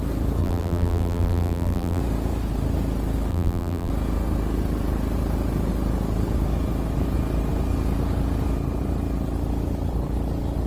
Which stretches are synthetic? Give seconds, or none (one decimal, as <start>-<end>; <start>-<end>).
0.4-2.0; 3.3-3.9